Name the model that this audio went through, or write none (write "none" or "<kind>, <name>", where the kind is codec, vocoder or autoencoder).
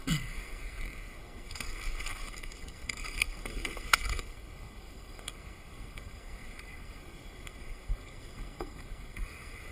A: codec, SNAC